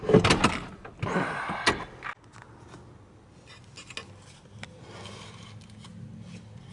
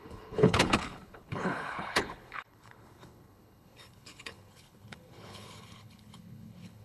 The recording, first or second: first